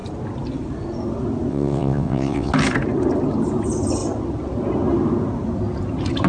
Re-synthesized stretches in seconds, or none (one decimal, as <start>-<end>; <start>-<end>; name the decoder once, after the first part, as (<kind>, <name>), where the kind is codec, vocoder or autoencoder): 1.5-2.5 (vocoder, WaveNeXt)